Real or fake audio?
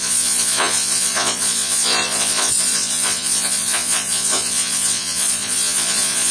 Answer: fake